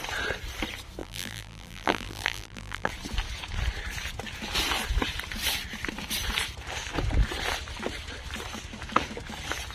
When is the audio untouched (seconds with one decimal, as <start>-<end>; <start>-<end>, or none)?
0.0-1.0; 2.9-9.7